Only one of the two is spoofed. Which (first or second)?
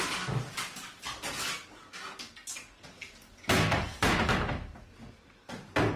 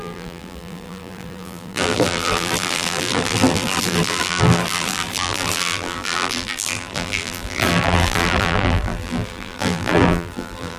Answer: second